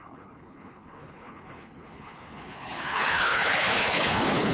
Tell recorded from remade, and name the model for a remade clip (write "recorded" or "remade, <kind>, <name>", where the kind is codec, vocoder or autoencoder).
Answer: remade, codec, HILCodec